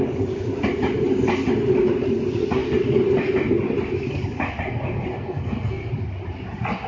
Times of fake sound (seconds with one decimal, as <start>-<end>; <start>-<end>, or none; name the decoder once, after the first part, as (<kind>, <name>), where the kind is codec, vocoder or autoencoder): 5.1-5.9 (codec, SNAC)